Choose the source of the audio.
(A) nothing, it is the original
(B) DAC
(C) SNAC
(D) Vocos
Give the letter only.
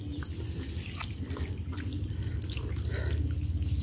A